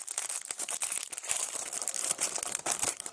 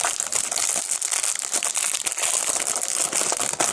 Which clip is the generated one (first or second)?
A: first